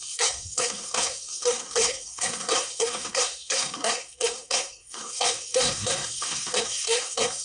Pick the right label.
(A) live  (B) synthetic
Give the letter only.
B